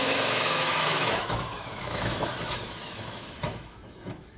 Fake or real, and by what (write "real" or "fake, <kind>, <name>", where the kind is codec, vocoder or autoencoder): fake, autoencoder, DAC-VAE